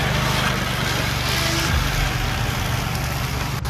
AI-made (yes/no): no